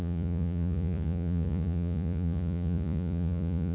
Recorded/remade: remade